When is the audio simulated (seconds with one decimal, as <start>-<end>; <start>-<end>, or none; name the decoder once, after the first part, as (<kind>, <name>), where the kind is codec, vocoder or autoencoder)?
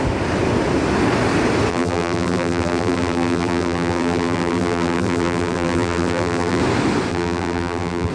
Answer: 1.7-6.6 (vocoder, BigVGAN v2); 7.1-8.1